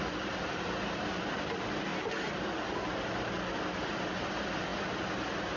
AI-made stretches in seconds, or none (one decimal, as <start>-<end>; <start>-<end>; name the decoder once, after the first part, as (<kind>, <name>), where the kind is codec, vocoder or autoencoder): none